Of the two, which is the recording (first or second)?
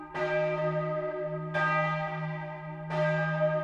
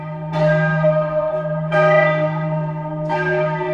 first